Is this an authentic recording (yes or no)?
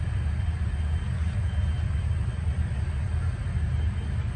yes